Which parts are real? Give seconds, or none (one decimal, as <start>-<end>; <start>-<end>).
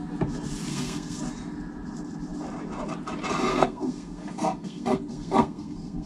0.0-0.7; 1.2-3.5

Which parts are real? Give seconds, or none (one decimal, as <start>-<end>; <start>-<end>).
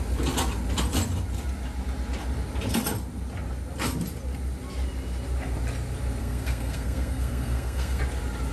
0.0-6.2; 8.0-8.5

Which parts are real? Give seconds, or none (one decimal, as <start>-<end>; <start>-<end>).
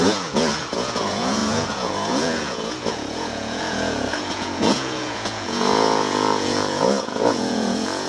none